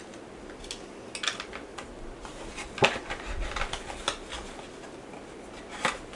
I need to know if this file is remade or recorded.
recorded